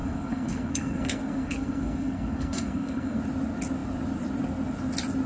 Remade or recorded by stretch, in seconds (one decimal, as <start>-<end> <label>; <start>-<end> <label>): 0.0-3.2 remade; 3.2-5.3 recorded